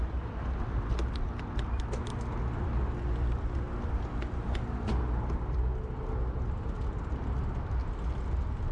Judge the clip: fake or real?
real